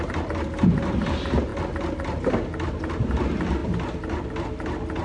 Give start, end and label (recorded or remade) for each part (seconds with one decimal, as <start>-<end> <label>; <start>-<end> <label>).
0.0-5.0 recorded